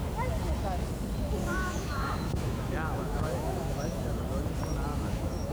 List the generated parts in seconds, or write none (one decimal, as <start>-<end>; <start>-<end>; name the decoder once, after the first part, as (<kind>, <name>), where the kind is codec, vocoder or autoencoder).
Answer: 1.4-4.2 (autoencoder, DAC-VAE); 4.9-5.5